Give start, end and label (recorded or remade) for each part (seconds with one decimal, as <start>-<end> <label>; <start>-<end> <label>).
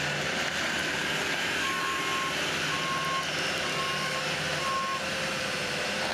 0.0-1.0 recorded; 1.0-2.0 remade; 2.0-3.7 recorded; 3.7-4.4 remade; 4.4-6.1 recorded